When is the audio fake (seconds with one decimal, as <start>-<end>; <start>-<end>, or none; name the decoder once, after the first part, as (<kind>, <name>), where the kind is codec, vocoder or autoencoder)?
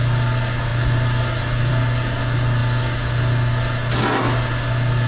none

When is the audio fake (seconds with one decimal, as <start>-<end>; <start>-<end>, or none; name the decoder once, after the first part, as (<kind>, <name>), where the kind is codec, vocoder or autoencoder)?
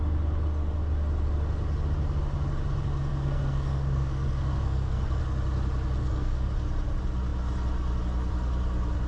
3.1-5.2 (codec, SNAC); 6.0-6.5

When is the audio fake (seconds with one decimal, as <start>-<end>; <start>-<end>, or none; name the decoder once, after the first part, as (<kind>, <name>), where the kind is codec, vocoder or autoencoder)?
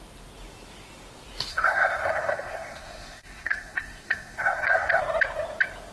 1.5-5.0 (codec, SNAC)